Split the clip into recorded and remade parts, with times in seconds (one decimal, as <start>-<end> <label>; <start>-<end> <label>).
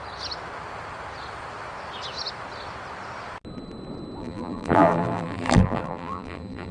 0.0-4.2 recorded; 4.2-6.7 remade